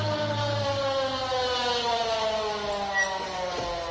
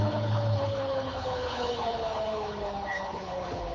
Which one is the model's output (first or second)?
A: second